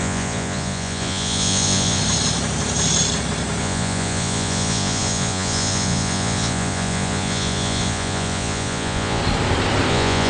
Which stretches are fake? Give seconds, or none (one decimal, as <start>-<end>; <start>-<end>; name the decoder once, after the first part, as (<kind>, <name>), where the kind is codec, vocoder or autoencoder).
0.0-2.0 (vocoder, Vocos); 3.6-9.2; 9.9-10.3